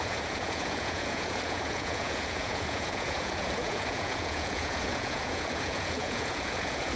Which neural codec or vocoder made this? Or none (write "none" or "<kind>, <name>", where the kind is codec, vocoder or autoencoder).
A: vocoder, Vocos